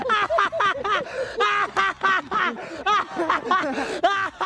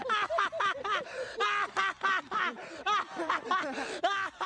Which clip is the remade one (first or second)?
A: second